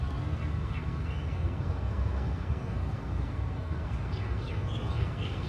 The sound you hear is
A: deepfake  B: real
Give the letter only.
A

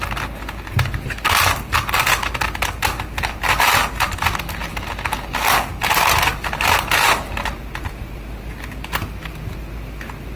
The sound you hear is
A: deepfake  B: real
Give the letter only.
B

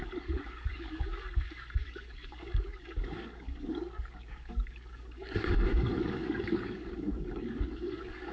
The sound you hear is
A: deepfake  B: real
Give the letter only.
A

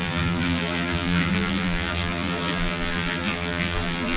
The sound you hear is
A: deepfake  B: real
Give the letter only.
A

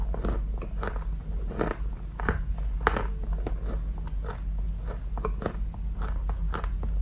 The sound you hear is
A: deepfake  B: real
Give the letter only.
B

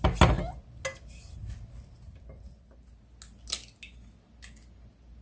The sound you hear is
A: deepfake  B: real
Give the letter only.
B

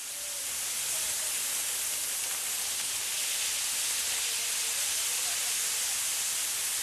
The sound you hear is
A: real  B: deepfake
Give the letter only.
A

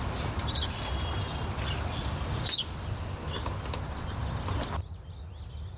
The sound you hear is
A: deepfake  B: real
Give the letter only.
B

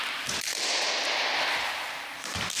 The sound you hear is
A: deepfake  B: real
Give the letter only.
A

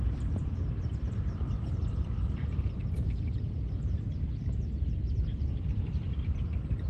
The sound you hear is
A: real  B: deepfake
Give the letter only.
B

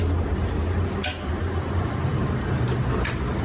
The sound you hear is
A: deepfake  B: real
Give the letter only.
A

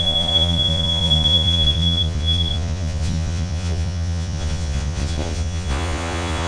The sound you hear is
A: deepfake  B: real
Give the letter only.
A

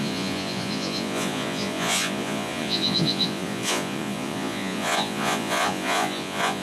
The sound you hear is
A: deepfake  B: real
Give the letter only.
A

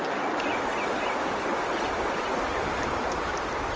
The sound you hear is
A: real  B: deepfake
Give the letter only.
A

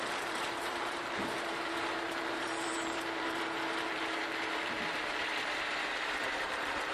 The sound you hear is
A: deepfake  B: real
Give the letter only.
A